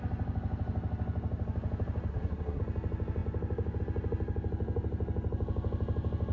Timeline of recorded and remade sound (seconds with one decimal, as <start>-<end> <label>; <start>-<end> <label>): 0.0-2.1 recorded; 2.1-2.6 remade; 2.6-6.3 recorded